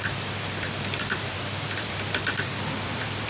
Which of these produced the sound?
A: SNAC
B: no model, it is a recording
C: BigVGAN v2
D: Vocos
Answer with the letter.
C